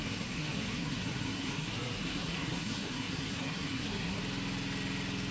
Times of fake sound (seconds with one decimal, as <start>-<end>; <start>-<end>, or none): 0.0-4.2